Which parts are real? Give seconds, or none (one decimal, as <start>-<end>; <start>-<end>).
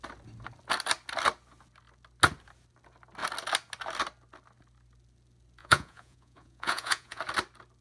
0.0-5.6; 7.2-7.8